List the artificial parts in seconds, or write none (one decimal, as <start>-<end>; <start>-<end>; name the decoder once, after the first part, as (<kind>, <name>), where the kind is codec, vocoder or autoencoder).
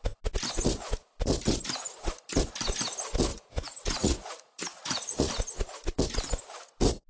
3.3-5.3 (vocoder, Vocos)